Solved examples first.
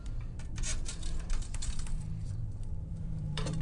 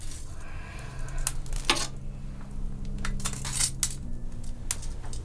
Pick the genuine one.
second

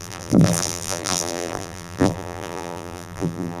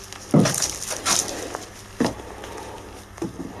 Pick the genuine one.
second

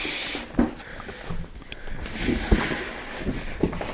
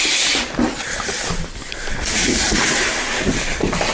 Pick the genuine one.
first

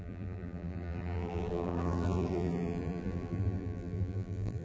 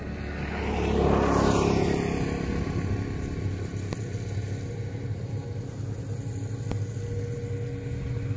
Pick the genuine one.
second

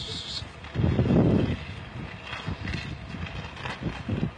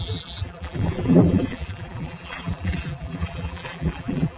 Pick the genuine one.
first